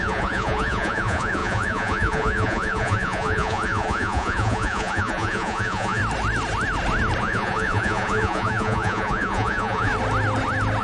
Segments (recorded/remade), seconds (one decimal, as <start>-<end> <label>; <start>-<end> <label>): 0.0-6.0 remade; 6.0-7.2 recorded; 7.2-9.9 remade; 9.9-10.8 recorded